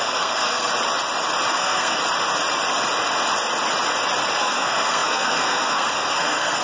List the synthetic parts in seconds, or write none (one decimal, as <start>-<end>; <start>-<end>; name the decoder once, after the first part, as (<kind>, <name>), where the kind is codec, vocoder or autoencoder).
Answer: 0.0-0.7 (codec, SNAC); 1.5-2.0; 4.4-6.6